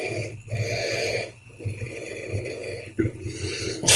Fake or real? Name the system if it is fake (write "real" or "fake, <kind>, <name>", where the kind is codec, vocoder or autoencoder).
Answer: fake, codec, HILCodec